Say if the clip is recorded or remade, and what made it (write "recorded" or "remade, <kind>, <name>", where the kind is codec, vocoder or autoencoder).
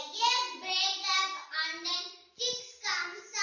recorded